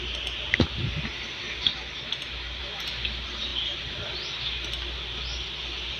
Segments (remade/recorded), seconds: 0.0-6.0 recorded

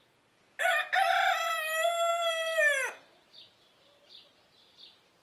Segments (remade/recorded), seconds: 0.0-5.2 recorded

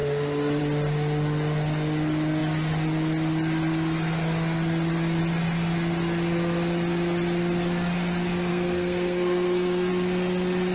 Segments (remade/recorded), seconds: 0.0-8.5 recorded; 8.5-9.9 remade; 9.9-10.7 recorded

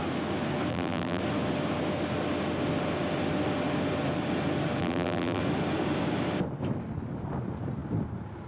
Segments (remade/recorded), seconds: 0.0-0.7 recorded; 0.7-1.2 remade; 1.2-4.8 recorded; 4.8-5.4 remade; 5.4-8.5 recorded

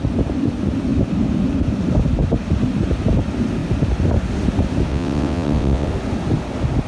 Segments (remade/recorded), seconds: 0.0-4.9 recorded; 4.9-5.9 remade; 5.9-6.9 recorded